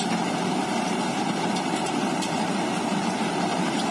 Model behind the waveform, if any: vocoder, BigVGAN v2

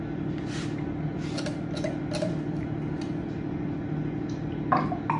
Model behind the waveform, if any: none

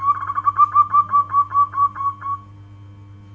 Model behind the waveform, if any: none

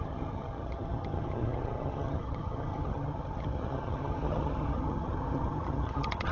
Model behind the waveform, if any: vocoder, HiFi-GAN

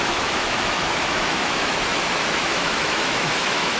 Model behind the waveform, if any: autoencoder, DAC-VAE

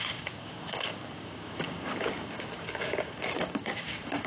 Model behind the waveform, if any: codec, DAC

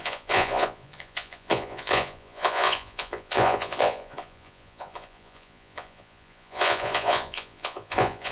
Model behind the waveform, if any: vocoder, Vocos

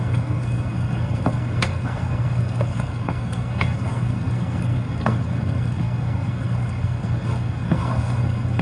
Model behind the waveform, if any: codec, SNAC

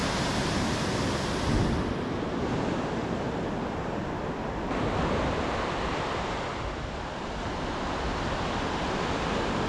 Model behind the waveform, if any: none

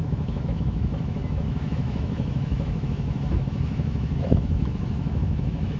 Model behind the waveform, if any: autoencoder, DAC-VAE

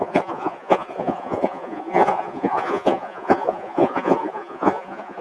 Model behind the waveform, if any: vocoder, Vocos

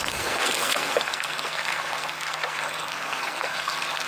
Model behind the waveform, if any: codec, SNAC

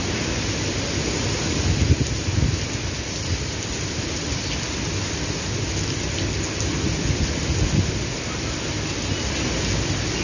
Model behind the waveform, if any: none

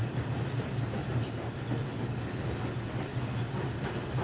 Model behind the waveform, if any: none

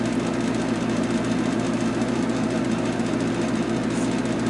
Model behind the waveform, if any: vocoder, BigVGAN v2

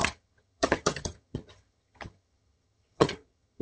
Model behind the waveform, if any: vocoder, HiFi-GAN